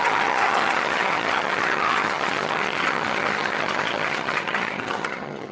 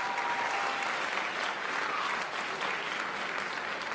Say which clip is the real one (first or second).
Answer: second